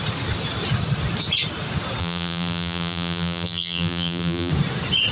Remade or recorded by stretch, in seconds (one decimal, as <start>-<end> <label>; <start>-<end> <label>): 0.0-2.0 recorded; 2.0-4.5 remade; 4.5-5.1 recorded